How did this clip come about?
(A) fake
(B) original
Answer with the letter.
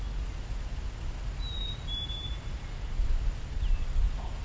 B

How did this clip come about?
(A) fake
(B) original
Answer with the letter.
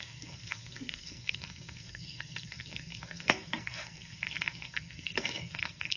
A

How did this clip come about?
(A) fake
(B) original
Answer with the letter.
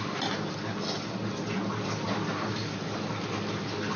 B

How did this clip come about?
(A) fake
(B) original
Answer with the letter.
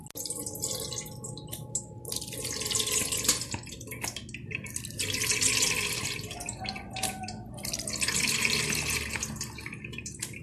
B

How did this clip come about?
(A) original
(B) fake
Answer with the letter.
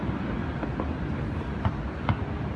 A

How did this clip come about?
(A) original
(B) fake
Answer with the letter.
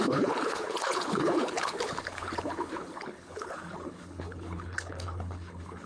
B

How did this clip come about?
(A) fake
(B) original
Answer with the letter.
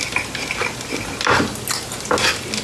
B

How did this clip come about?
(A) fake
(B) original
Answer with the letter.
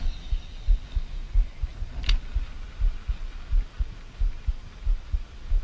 B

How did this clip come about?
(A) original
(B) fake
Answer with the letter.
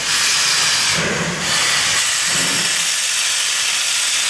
A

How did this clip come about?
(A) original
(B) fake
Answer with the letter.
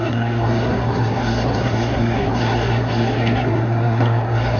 B